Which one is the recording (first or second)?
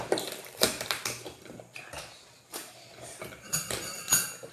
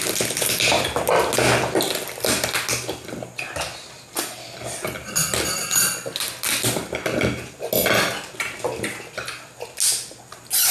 second